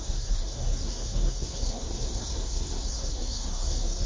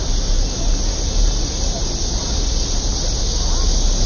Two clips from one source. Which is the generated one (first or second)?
first